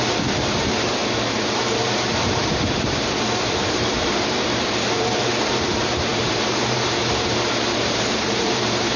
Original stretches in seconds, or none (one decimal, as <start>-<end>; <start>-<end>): none